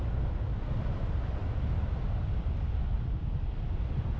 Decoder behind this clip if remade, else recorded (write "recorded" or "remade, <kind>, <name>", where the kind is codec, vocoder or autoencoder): recorded